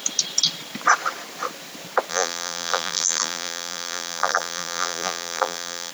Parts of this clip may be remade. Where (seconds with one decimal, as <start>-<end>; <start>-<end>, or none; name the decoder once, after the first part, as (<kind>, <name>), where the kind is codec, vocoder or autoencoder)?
2.1-5.9 (vocoder, BigVGAN v2)